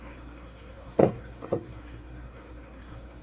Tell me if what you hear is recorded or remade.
remade